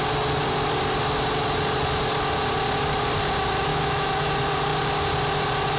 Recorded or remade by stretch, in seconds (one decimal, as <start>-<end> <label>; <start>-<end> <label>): 0.0-3.7 recorded; 3.7-4.3 remade; 4.3-5.8 recorded